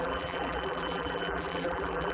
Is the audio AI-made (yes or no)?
yes